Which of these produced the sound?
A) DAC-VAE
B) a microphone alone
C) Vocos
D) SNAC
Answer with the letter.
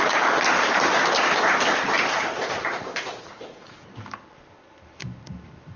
B